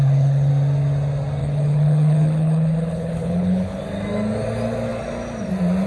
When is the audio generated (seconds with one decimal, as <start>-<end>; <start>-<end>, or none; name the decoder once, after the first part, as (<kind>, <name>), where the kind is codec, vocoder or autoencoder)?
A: 0.0-0.5 (codec, HILCodec); 1.4-3.8